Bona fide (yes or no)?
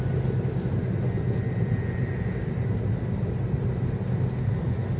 yes